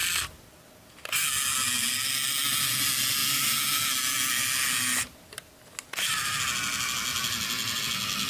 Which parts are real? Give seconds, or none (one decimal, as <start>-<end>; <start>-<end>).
0.0-8.3